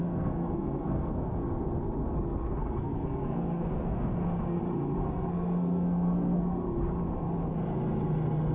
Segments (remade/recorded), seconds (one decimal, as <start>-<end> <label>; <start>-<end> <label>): 0.0-1.4 remade; 1.4-2.6 recorded; 2.6-4.6 remade; 4.6-5.0 recorded; 5.0-6.4 remade; 6.4-8.5 recorded